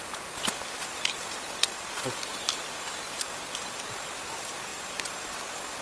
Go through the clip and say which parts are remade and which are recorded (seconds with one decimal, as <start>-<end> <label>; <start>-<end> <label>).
0.0-2.3 recorded; 2.3-3.2 remade; 3.2-5.8 recorded